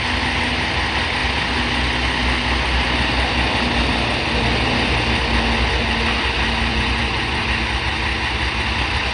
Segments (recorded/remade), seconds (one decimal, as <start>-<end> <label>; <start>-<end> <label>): 0.0-6.7 recorded; 6.7-7.4 remade; 7.4-9.1 recorded